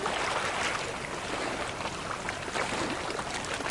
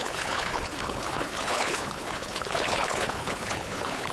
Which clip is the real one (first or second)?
first